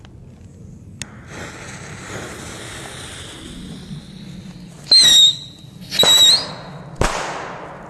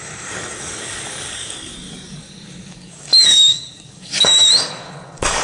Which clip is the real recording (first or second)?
first